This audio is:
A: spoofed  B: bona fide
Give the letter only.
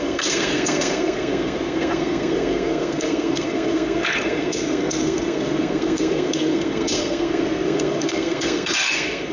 A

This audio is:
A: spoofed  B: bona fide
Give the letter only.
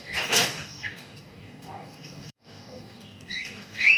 A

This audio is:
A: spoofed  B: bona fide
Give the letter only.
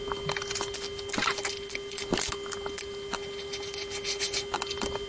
B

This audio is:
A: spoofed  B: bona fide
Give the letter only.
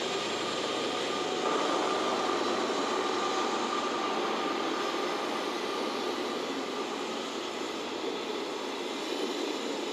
B